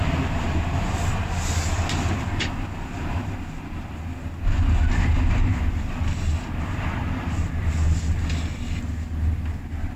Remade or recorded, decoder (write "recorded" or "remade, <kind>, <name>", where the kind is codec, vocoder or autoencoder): recorded